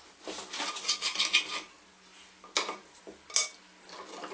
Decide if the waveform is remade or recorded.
recorded